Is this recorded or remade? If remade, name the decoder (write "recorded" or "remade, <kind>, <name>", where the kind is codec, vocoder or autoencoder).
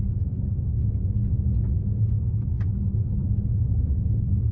recorded